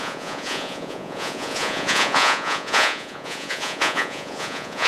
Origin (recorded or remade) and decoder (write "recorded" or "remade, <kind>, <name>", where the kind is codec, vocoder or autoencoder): remade, vocoder, Vocos